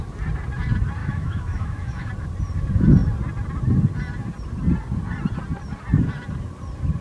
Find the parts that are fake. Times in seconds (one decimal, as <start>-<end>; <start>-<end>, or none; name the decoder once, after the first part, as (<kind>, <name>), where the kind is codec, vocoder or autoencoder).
1.0-2.1 (autoencoder, DAC-VAE)